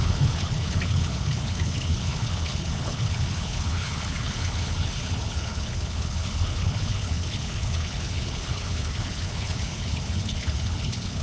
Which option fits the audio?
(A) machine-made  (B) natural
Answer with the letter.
A